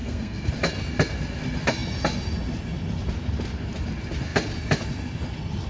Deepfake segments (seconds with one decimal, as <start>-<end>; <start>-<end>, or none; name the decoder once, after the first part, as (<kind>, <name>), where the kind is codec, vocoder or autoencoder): 0.0-0.5 (codec, SNAC)